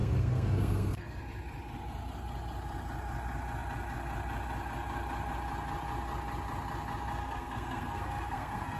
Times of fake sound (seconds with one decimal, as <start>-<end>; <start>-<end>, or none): 0.0-1.2; 7.2-8.8